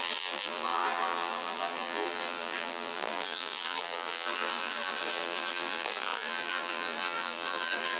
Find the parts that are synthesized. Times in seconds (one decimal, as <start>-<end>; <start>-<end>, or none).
0.0-8.0